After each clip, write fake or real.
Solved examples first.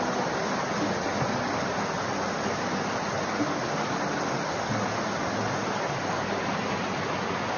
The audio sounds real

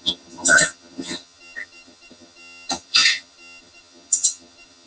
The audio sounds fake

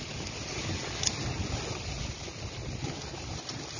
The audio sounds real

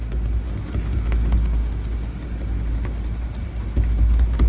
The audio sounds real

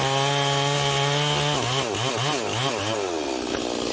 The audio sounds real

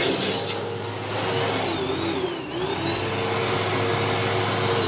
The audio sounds real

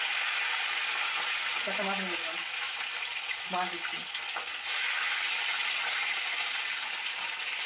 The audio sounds real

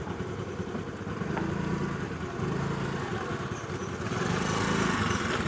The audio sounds real